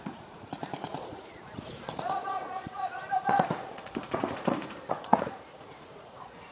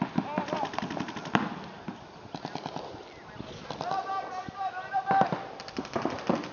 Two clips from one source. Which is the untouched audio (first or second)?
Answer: second